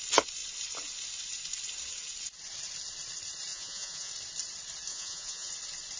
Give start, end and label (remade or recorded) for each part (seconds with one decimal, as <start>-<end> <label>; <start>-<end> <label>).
0.0-3.5 recorded; 3.5-4.1 remade; 4.1-4.9 recorded; 4.9-5.5 remade; 5.5-6.0 recorded